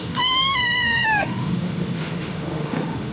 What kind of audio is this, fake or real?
fake